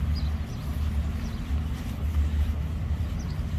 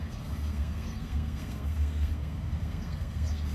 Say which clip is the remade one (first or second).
second